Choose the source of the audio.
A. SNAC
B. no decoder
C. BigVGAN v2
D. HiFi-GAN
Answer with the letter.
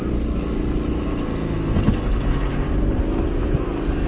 B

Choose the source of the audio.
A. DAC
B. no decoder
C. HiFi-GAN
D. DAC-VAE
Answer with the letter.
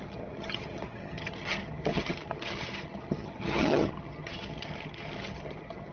C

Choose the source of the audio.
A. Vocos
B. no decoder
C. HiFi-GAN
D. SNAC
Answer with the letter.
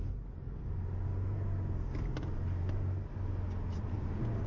B